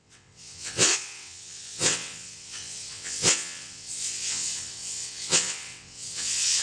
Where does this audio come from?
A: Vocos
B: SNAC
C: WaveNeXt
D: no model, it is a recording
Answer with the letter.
C